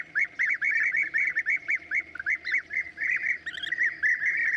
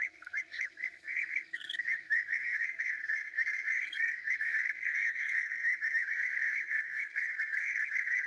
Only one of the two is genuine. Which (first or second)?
first